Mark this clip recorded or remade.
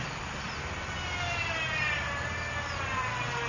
recorded